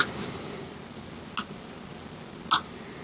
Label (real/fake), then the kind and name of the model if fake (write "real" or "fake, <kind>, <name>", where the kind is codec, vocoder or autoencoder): real